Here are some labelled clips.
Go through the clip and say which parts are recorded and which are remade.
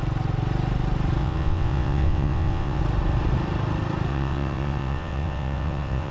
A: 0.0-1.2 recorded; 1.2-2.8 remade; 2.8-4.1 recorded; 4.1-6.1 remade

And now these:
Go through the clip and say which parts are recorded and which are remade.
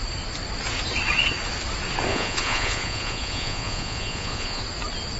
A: 0.0-2.1 recorded; 2.1-4.6 remade; 4.6-5.2 recorded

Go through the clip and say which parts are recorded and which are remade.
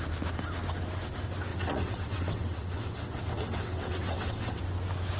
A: 0.0-1.5 recorded; 1.5-4.6 remade; 4.6-5.2 recorded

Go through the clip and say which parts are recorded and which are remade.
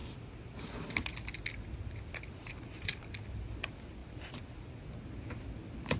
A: 0.0-2.4 recorded; 2.4-3.1 remade; 3.1-4.0 recorded; 4.0-4.7 remade; 4.7-6.0 recorded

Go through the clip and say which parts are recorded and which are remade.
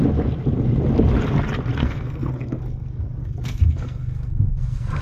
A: 0.0-1.8 recorded; 1.8-5.0 remade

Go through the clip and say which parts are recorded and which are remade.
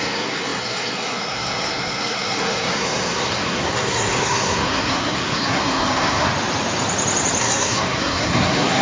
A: 0.0-6.3 remade; 6.3-7.4 recorded; 7.4-8.8 remade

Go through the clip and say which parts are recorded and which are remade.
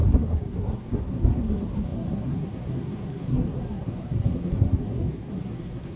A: 0.0-6.0 remade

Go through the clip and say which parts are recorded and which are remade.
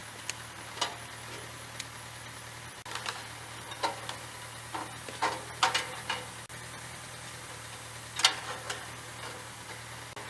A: 0.0-10.3 recorded